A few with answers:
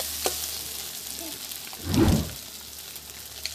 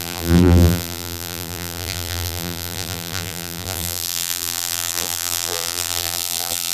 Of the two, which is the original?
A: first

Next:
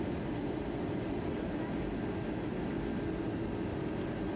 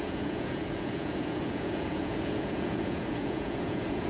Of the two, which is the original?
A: first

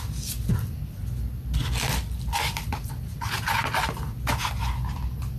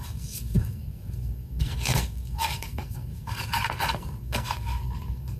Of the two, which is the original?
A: first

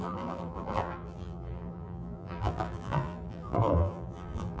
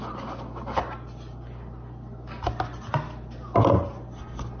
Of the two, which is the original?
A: second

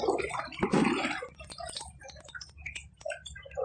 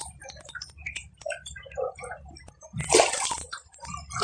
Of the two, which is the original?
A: first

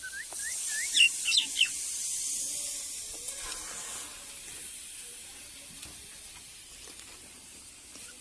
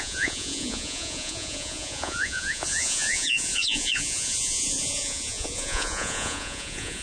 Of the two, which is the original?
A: first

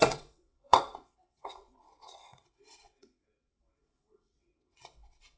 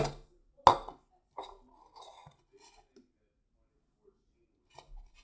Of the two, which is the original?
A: second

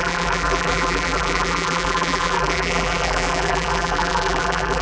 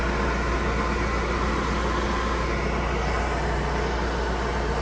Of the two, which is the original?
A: second